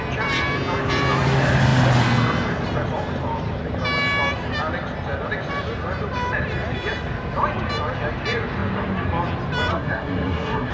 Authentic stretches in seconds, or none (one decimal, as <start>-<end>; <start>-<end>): 0.0-9.7